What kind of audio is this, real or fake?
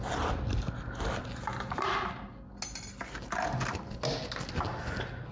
real